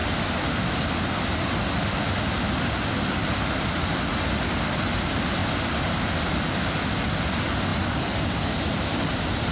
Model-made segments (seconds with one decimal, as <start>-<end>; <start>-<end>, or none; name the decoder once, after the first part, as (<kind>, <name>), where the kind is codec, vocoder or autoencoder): none